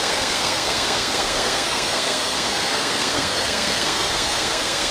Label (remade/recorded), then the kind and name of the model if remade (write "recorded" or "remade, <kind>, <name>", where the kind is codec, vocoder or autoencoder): remade, codec, SNAC